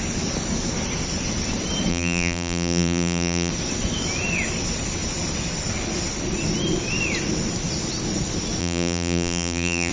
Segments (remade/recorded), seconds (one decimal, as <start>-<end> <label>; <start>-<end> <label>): 0.0-1.9 recorded; 1.9-3.5 remade; 3.5-8.6 recorded; 8.6-9.9 remade